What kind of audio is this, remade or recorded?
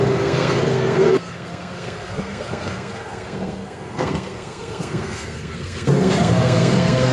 remade